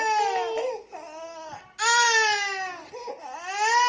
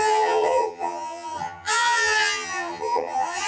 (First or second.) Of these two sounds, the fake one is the second